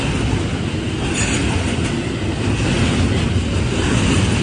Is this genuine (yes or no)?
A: yes